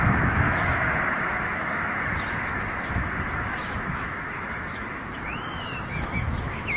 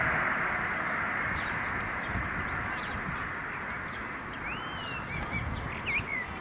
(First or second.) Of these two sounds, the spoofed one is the first